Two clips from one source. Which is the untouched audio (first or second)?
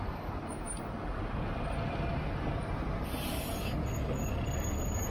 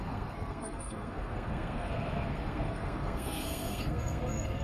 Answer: first